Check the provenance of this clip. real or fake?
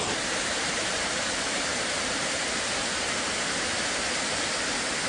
fake